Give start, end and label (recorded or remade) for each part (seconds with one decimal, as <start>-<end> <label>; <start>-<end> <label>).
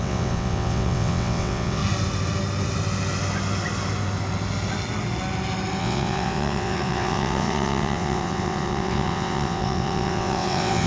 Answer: 0.0-1.8 remade; 1.8-5.8 recorded; 5.8-10.9 remade